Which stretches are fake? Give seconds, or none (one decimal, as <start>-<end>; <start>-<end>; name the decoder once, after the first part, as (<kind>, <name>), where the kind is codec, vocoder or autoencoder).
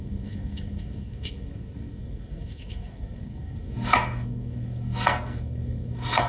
0.0-6.3 (codec, SNAC)